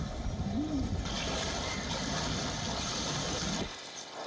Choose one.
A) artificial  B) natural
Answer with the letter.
B